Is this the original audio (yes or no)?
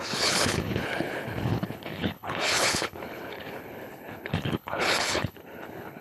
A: no